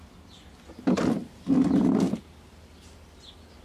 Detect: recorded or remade recorded